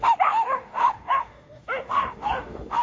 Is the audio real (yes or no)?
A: no